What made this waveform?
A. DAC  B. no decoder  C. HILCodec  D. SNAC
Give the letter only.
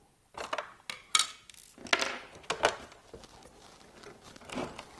B